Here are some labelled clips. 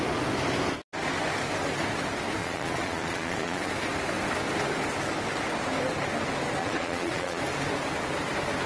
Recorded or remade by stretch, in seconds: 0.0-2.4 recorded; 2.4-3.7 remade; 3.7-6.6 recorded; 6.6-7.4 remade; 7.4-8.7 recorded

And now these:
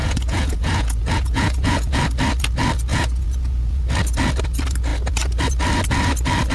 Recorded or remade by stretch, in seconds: 0.0-2.0 remade; 2.0-2.9 recorded; 2.9-3.8 remade; 3.8-6.5 recorded

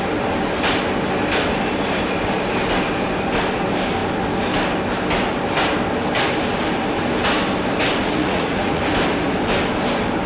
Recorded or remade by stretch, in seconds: 0.0-8.0 recorded; 8.0-8.8 remade; 8.8-10.3 recorded

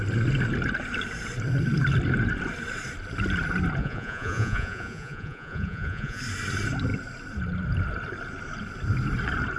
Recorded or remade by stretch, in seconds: 0.0-3.8 recorded; 3.8-6.2 remade; 6.2-9.6 recorded

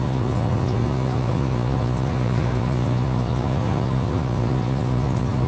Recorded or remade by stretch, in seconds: 0.0-5.5 remade

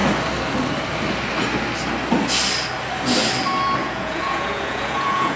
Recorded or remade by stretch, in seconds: 0.0-3.8 recorded; 3.8-5.4 remade

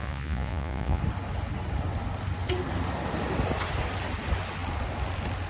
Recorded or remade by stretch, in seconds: 0.0-1.0 remade; 1.0-5.5 recorded